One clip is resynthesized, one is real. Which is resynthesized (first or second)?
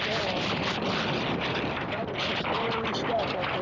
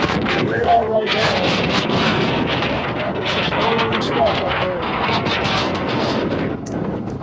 second